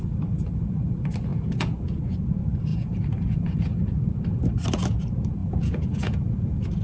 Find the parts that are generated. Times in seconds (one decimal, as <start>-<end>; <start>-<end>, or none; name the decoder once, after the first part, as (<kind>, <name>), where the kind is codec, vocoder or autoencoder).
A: 1.3-2.0 (vocoder, Vocos); 2.7-3.7; 5.4-6.8